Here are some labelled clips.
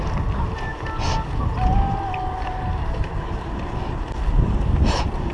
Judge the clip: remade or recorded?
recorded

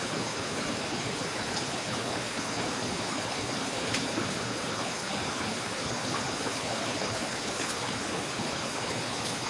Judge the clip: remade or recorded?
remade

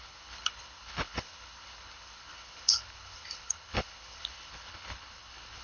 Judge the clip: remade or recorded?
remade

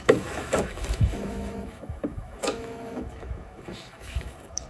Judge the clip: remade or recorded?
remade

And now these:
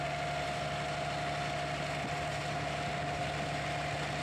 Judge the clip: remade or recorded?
recorded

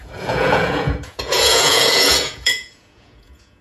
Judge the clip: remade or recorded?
remade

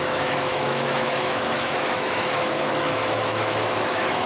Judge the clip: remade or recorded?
remade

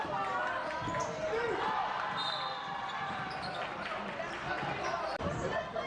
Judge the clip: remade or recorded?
recorded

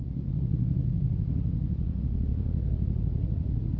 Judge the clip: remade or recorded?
remade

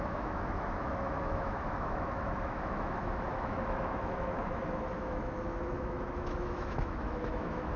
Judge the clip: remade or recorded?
remade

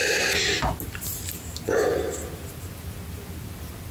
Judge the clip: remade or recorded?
recorded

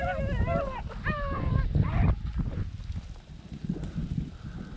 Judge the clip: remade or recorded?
recorded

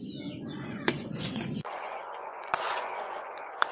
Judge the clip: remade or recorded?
remade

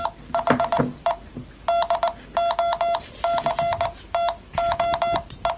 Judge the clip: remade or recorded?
recorded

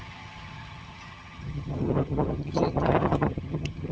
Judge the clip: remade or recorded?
remade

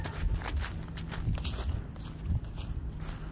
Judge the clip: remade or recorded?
recorded